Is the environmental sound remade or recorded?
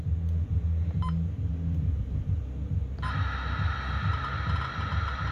recorded